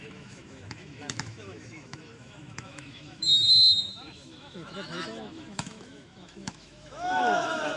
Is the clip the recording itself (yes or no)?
no